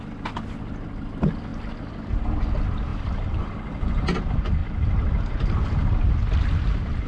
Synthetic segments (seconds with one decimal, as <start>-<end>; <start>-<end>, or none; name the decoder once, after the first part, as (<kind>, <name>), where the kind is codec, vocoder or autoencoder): 1.5-2.2 (vocoder, BigVGAN v2); 2.9-3.5